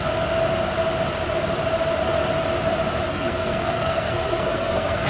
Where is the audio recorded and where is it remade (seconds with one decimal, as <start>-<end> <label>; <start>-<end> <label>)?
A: 0.0-3.1 recorded; 3.1-5.1 remade